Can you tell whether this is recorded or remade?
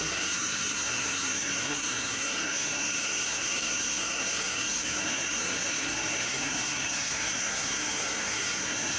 remade